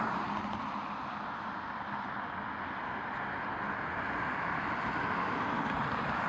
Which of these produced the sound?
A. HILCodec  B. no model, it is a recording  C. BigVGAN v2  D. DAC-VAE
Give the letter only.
B